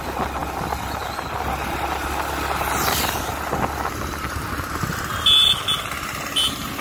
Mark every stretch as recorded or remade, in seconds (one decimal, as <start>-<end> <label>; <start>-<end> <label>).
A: 0.0-6.8 recorded